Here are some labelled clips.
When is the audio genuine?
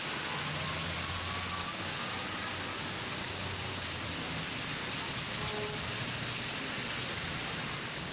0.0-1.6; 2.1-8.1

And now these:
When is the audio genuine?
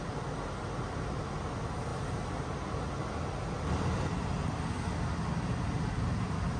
0.0-6.6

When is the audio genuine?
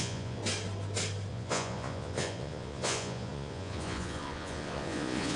0.4-1.3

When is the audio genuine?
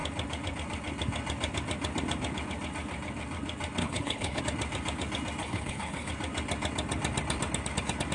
0.0-3.8; 4.4-5.4; 6.1-8.1